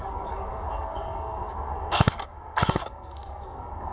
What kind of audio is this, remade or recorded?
remade